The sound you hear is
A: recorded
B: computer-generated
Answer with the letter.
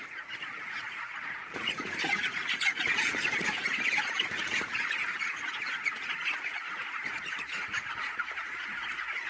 B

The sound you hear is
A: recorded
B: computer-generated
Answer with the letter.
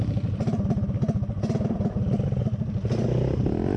A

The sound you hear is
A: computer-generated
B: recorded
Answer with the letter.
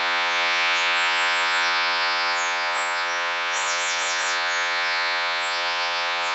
A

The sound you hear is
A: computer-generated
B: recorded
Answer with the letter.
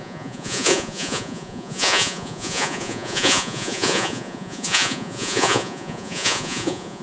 A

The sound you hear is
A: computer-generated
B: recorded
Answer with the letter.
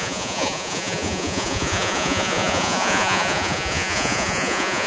A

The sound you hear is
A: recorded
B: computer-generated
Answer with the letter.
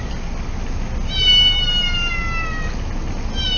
A